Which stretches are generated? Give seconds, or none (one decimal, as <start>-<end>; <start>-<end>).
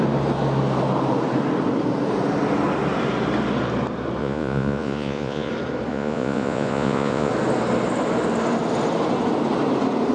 4.2-5.5; 5.9-7.3